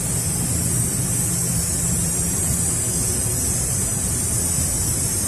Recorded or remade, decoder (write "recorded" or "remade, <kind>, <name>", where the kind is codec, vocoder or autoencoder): remade, vocoder, BigVGAN v2